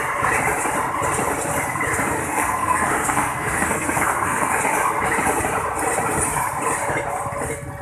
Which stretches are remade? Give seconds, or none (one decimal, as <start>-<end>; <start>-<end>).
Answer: 2.2-4.6